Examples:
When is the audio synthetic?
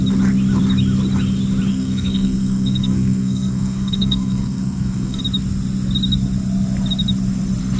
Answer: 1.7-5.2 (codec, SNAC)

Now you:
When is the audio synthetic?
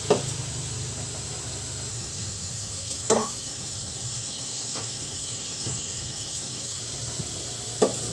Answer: 1.9-6.8 (codec, SNAC)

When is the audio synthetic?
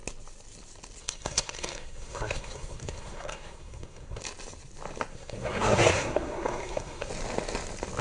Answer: 1.0-4.2 (codec, SNAC); 5.1-7.1